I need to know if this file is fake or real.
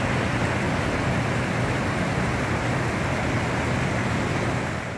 real